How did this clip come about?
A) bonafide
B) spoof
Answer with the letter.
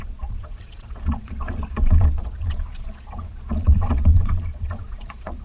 B